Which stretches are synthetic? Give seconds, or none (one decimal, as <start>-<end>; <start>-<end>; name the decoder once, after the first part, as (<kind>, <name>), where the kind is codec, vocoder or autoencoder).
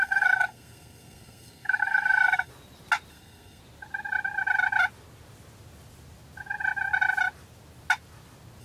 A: 0.0-2.5 (codec, SNAC); 3.1-3.6